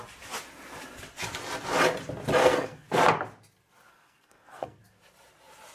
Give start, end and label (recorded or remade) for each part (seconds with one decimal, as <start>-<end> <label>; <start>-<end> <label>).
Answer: 0.0-2.4 recorded; 2.4-3.0 remade; 3.0-3.9 recorded; 3.9-4.8 remade; 4.8-5.7 recorded